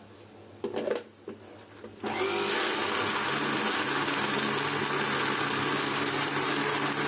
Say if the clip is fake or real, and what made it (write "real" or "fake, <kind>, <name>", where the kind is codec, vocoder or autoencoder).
real